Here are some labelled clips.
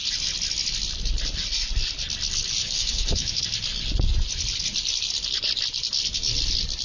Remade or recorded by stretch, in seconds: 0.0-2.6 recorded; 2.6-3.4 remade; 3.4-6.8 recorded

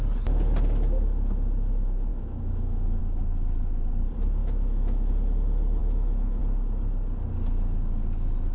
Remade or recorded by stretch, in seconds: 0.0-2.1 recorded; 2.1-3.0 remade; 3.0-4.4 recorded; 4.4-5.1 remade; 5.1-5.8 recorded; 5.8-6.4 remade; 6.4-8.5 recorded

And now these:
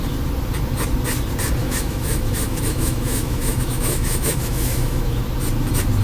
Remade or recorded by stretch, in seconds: 0.0-1.6 recorded; 1.6-5.2 remade; 5.2-6.0 recorded

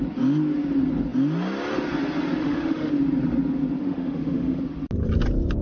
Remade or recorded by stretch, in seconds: 0.0-2.4 recorded; 2.4-2.9 remade; 2.9-3.8 recorded; 3.8-4.6 remade; 4.6-5.6 recorded